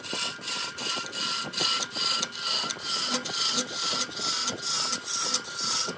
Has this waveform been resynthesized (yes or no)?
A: no